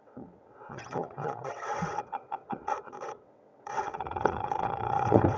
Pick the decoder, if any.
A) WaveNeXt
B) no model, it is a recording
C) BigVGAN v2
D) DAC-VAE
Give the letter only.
A